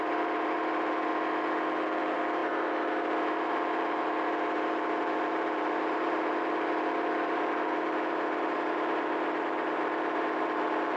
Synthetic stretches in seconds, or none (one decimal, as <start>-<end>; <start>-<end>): 0.0-1.1; 2.0-11.0